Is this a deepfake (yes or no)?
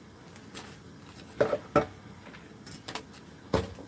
no